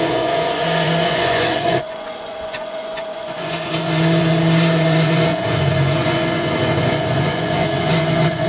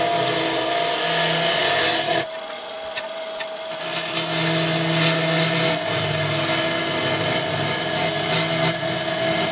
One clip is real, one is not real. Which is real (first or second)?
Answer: second